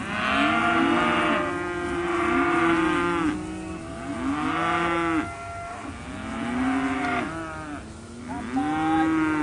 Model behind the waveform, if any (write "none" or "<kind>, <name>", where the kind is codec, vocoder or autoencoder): none